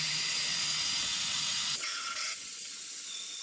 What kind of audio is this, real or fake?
fake